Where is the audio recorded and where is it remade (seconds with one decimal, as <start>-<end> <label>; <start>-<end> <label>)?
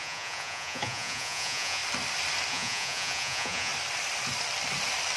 0.0-1.8 remade; 1.8-2.5 recorded; 2.5-3.7 remade; 3.7-5.2 recorded